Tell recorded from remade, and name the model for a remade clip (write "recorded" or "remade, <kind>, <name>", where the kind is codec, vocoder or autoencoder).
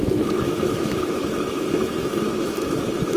remade, autoencoder, DAC-VAE